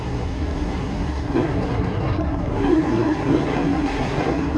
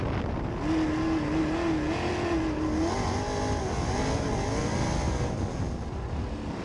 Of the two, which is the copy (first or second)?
first